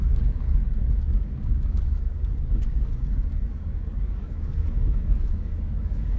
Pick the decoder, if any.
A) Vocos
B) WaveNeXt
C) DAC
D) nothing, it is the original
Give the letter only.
C